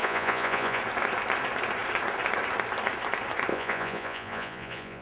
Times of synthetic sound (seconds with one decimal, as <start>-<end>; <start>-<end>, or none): 0.0-0.8; 3.5-5.0